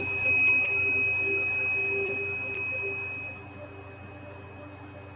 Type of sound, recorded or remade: recorded